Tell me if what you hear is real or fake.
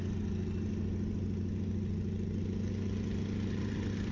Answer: real